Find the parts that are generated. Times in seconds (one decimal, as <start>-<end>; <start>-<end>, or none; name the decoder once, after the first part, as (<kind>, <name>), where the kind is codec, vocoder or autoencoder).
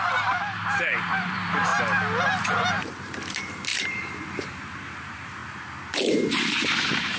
0.0-1.7 (vocoder, BigVGAN v2); 2.4-5.4; 6.3-7.2